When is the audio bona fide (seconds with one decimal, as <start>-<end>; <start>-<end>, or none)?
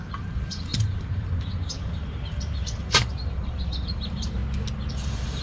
4.4-4.9